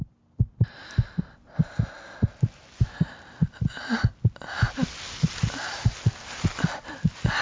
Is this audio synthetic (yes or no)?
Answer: no